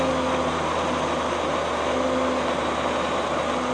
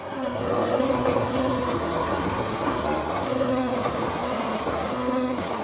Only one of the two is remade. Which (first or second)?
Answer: second